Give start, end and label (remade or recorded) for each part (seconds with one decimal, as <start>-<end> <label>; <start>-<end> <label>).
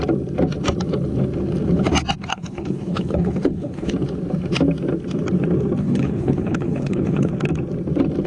0.0-2.3 recorded; 2.3-3.9 remade; 3.9-5.8 recorded; 5.8-7.3 remade; 7.3-8.3 recorded